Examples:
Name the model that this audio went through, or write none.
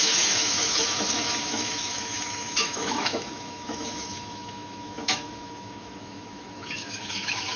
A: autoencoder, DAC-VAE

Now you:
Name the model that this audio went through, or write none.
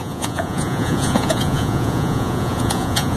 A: vocoder, Vocos